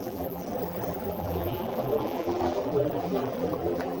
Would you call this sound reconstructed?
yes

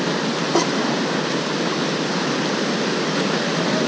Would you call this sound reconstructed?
no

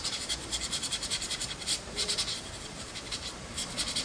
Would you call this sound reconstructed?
yes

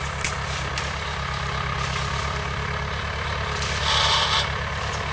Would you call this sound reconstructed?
no